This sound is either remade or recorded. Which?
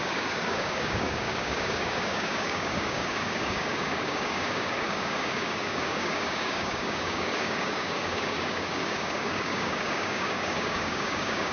remade